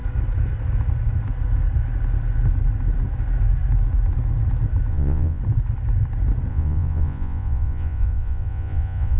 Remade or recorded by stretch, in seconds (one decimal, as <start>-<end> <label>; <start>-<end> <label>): 0.0-4.9 recorded; 4.9-5.4 remade; 5.4-6.5 recorded; 6.5-9.2 remade